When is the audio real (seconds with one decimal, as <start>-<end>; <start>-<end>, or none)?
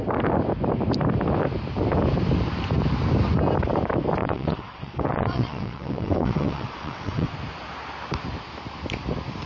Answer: 0.0-4.2; 7.3-9.5